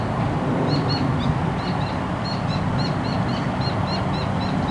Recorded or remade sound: recorded